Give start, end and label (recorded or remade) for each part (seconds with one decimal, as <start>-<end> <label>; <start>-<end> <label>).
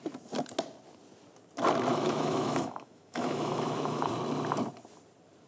0.0-1.9 recorded; 1.9-4.1 remade; 4.1-5.5 recorded